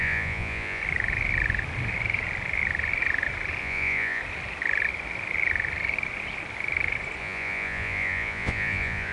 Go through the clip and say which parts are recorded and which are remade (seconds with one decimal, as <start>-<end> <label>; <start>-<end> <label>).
0.0-0.8 remade; 0.8-3.6 recorded; 3.6-4.2 remade; 4.2-7.2 recorded; 7.2-9.1 remade